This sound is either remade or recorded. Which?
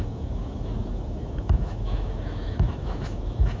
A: remade